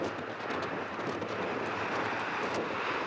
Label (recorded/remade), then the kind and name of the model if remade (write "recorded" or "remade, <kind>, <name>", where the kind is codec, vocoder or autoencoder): recorded